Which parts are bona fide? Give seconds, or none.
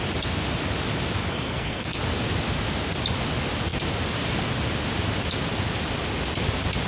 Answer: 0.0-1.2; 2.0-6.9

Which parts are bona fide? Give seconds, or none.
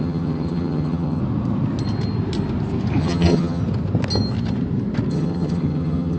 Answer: 1.2-3.0; 3.6-5.1